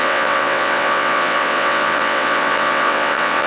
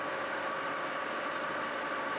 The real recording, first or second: second